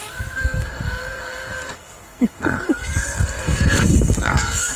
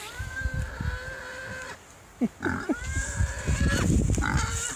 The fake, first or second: first